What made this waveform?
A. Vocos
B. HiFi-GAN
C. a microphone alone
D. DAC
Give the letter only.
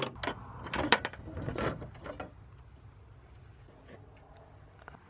C